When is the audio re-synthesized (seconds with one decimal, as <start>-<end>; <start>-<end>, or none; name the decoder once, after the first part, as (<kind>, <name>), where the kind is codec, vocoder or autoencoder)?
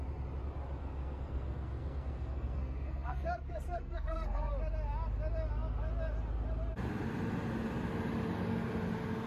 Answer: 0.8-4.5 (codec, SNAC)